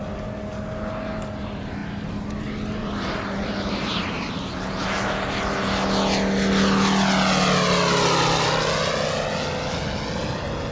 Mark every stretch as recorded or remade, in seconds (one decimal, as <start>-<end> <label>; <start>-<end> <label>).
0.0-2.8 recorded; 2.8-4.5 remade; 4.5-10.7 recorded